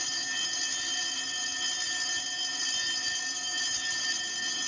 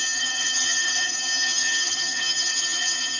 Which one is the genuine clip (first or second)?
first